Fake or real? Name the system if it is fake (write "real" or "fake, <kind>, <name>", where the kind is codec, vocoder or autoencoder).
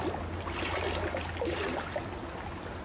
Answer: real